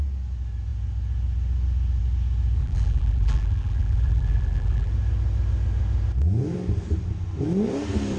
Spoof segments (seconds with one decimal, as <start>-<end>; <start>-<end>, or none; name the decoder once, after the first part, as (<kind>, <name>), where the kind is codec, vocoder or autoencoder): 2.6-4.9 (vocoder, BigVGAN v2)